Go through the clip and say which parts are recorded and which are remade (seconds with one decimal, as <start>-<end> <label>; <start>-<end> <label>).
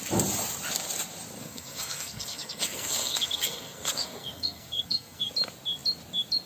0.0-1.4 recorded; 1.4-5.3 remade; 5.3-6.5 recorded